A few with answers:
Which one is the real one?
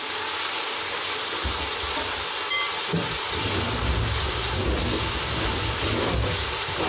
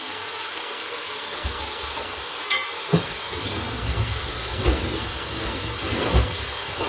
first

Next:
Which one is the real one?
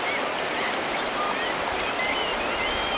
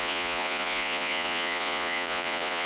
first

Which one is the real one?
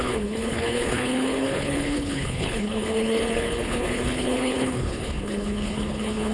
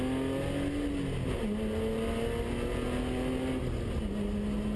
second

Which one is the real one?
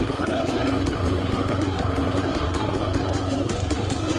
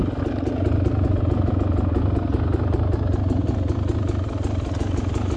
second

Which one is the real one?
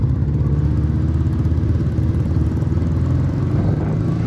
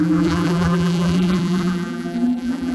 first